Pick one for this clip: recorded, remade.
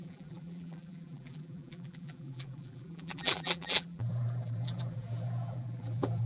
remade